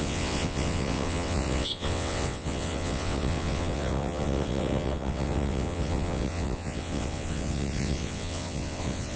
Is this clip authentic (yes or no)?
no